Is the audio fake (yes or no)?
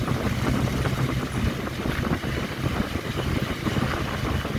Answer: no